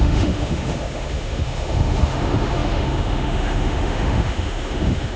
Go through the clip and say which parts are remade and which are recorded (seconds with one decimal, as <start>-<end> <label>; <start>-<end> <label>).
0.0-5.2 remade